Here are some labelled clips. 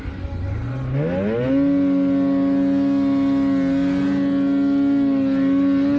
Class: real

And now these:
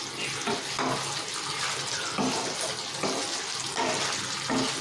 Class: real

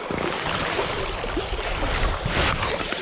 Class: real